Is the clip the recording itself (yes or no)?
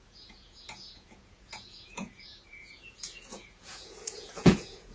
no